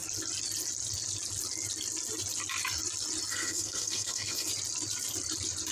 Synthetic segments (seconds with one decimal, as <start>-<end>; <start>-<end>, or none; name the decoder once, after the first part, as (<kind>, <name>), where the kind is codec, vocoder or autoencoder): 3.3-4.5 (codec, SNAC)